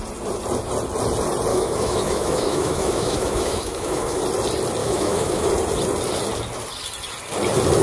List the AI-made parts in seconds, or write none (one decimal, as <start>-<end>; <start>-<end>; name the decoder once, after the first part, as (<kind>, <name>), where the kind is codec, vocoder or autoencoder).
1.5-4.2 (autoencoder, DAC-VAE); 4.8-5.5